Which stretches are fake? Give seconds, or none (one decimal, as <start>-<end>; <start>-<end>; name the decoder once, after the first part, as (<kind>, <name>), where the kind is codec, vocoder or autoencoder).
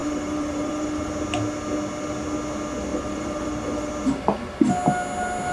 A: 0.0-1.1 (vocoder, BigVGAN v2); 2.9-3.9